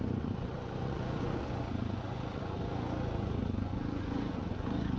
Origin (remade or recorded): remade